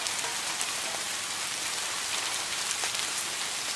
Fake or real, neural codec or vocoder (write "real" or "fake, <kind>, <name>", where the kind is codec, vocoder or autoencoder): real